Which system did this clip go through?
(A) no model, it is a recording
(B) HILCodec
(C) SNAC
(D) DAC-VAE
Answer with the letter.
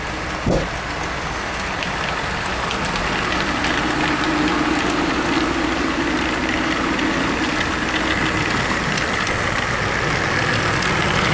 A